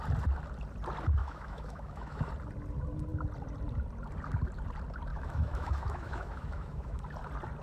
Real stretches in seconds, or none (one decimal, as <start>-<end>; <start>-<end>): 0.0-1.2; 2.3-5.1; 7.0-7.6